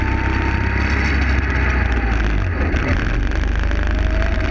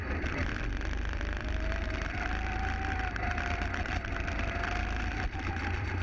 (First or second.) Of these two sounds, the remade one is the second